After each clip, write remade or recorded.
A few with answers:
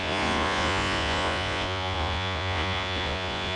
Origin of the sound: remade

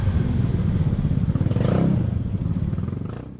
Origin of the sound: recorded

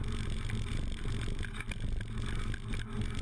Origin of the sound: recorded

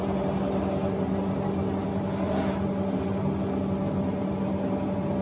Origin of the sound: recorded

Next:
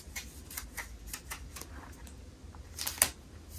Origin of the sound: recorded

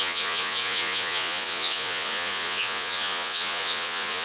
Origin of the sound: remade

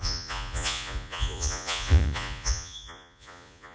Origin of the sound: remade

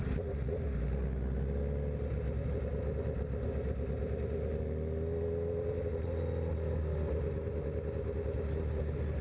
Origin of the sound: recorded